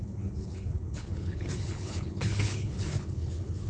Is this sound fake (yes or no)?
yes